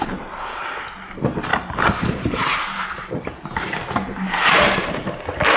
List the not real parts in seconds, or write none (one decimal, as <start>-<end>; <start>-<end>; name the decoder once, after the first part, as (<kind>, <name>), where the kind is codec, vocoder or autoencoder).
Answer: 1.5-4.9 (vocoder, BigVGAN v2)